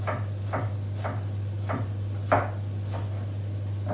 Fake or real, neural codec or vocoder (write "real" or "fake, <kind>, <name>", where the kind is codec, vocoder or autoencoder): real